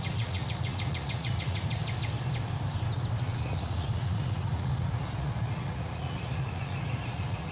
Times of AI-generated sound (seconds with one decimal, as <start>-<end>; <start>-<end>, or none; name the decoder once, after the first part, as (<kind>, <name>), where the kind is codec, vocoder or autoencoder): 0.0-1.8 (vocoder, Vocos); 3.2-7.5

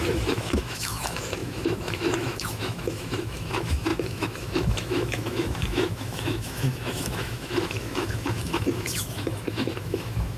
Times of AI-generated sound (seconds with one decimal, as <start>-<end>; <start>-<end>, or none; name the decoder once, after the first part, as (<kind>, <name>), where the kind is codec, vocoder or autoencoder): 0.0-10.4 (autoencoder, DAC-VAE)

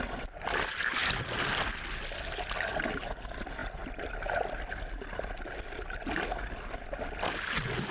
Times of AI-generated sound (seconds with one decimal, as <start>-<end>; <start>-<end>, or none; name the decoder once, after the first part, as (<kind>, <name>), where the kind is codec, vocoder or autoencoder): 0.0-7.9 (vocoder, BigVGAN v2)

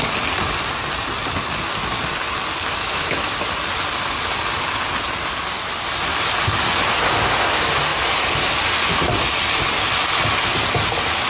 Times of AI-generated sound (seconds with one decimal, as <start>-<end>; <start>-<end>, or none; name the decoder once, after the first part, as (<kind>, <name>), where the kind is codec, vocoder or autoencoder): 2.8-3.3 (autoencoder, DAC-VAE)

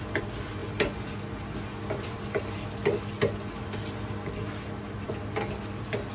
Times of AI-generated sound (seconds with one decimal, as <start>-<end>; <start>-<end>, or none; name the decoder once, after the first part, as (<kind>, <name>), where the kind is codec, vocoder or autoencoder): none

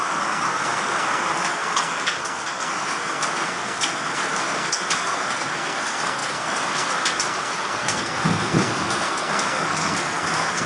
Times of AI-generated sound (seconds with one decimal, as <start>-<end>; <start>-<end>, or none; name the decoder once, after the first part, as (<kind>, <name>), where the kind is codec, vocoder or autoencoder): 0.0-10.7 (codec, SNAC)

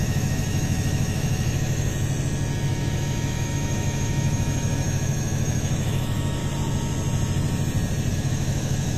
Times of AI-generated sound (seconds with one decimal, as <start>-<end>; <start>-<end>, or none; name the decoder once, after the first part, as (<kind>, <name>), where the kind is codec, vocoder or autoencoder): 0.0-1.9 (autoencoder, DAC-VAE); 2.7-6.4; 8.1-9.0